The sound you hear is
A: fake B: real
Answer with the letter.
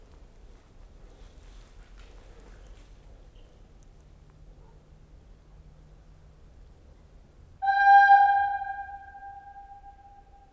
B